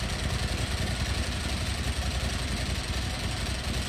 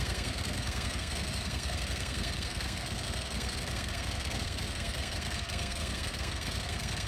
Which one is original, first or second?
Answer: first